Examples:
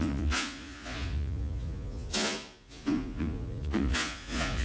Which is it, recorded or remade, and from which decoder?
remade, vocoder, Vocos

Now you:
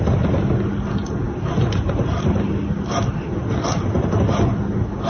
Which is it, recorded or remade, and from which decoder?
recorded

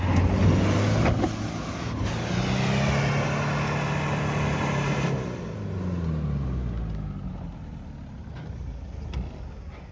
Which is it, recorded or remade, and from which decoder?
recorded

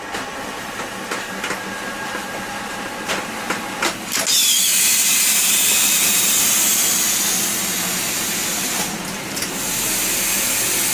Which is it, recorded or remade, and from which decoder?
recorded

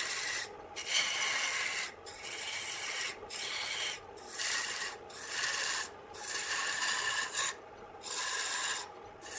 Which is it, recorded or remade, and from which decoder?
recorded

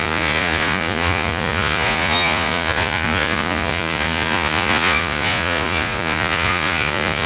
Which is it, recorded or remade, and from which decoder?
remade, vocoder, Vocos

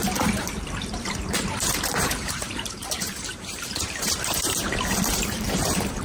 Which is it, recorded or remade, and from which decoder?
remade, vocoder, BigVGAN v2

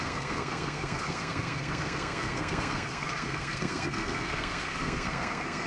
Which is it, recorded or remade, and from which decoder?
remade, codec, SNAC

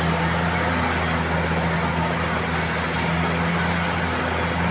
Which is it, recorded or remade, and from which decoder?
recorded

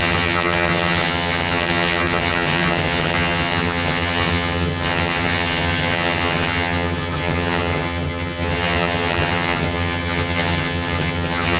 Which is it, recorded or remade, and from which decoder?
remade, vocoder, HiFi-GAN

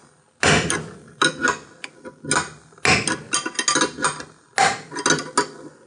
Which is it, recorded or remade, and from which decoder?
recorded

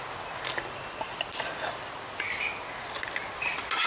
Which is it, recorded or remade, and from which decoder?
recorded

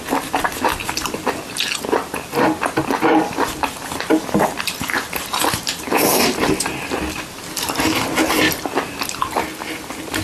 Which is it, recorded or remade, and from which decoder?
recorded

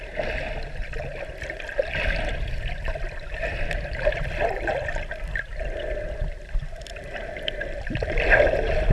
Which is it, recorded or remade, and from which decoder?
recorded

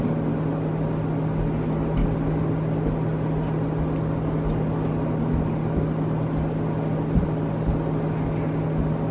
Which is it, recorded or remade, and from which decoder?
recorded